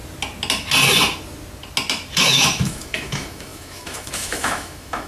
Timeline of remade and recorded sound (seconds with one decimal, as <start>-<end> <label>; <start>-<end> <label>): 0.0-2.2 recorded; 2.2-5.1 remade